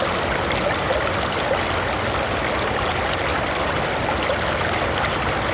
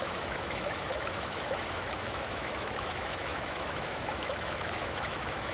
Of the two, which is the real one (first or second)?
first